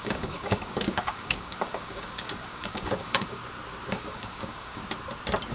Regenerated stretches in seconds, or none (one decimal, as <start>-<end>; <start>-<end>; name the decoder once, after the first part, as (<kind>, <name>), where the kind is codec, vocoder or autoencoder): 0.0-3.4 (codec, DAC); 3.9-4.8